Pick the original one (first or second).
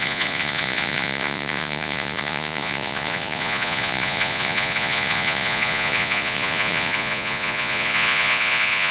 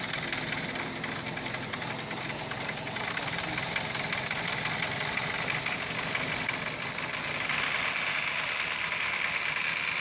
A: second